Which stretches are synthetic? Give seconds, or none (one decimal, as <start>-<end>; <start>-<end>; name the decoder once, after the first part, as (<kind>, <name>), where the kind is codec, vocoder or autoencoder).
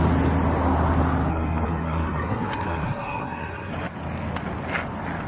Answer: 1.3-3.7 (codec, SNAC)